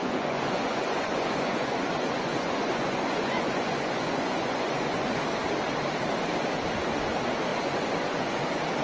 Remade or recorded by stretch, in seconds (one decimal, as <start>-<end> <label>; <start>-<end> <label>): 0.0-5.2 remade; 5.2-7.5 recorded; 7.5-8.4 remade; 8.4-8.8 recorded